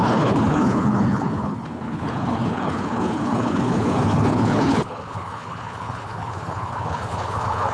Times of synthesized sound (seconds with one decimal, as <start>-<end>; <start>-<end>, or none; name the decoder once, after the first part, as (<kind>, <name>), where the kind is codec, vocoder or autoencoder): 0.0-7.7 (codec, HILCodec)